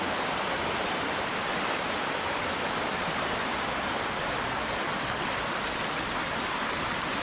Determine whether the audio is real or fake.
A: real